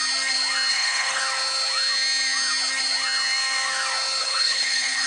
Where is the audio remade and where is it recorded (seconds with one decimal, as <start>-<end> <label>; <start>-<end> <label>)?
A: 0.0-0.7 recorded; 0.7-1.2 remade; 1.2-4.2 recorded; 4.2-5.1 remade